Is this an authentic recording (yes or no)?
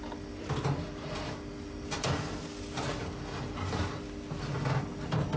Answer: yes